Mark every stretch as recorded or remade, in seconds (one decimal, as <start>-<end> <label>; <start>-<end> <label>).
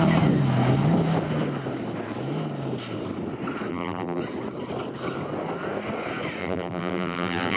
0.0-3.7 recorded; 3.7-4.2 remade; 4.2-6.4 recorded; 6.4-7.6 remade